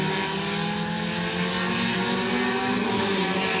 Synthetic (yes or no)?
no